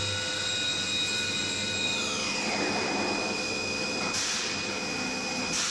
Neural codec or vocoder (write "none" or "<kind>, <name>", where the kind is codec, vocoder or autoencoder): none